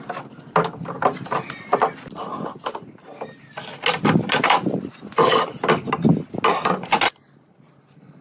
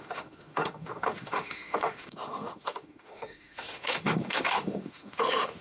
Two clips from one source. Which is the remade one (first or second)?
second